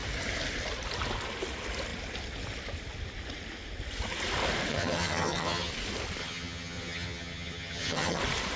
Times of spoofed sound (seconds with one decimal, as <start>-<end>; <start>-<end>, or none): 4.7-5.7; 6.2-8.2